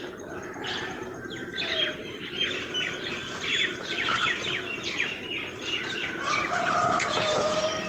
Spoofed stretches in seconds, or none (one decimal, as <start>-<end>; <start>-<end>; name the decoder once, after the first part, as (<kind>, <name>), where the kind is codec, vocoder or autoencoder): 0.0-2.0 (vocoder, BigVGAN v2); 2.8-7.9